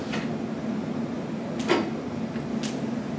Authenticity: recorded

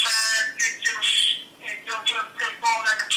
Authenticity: remade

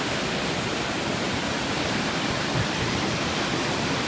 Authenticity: remade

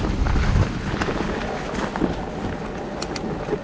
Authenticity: recorded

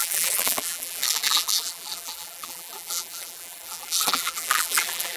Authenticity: remade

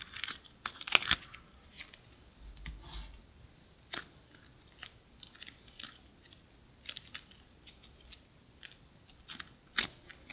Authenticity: recorded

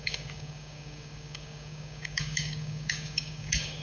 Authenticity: remade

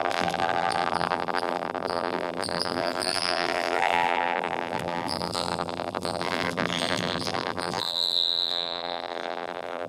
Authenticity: remade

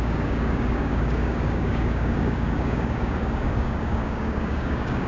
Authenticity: remade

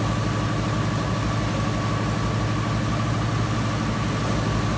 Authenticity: recorded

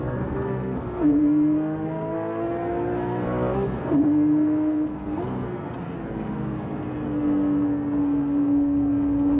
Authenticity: remade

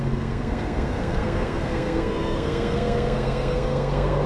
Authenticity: remade